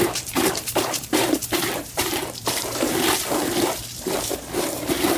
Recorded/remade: remade